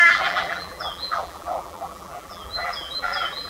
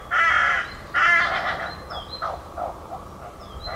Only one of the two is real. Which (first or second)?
second